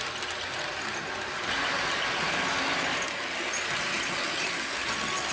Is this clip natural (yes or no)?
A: yes